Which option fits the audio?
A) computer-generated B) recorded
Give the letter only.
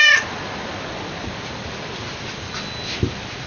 B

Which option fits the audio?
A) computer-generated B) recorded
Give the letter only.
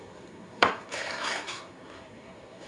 A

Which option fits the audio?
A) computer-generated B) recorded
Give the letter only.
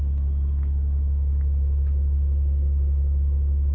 B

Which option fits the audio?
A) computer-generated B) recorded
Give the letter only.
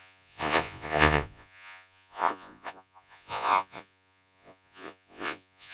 A